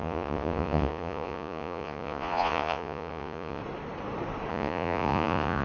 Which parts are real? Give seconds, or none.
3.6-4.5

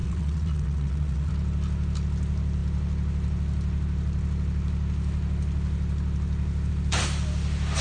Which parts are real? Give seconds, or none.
1.3-7.8

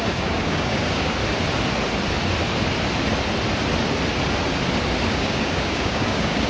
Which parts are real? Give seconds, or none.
1.2-5.1